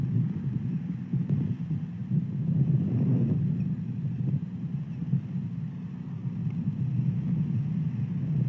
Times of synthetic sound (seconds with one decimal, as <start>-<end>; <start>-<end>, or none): 0.0-6.2